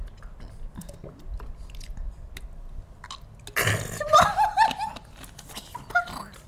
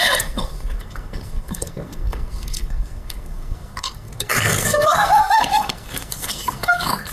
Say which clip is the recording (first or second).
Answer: first